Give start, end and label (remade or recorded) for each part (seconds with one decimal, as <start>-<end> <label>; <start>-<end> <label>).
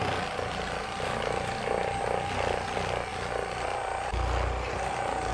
0.0-5.3 recorded